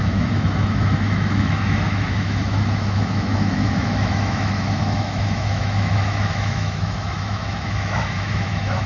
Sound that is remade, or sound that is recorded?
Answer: remade